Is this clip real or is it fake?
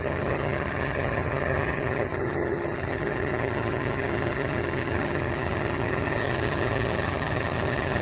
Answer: fake